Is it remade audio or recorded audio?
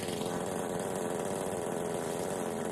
recorded